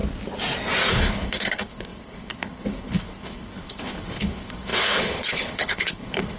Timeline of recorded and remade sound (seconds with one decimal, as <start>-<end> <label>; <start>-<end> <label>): 0.0-0.9 recorded; 0.9-6.4 remade